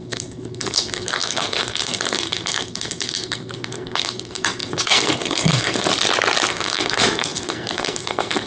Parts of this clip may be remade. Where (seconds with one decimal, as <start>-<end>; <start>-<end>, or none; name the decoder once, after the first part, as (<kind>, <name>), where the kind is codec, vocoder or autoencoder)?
0.0-5.9 (codec, SNAC); 6.5-8.5